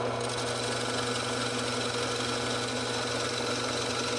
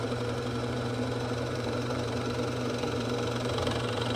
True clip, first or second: first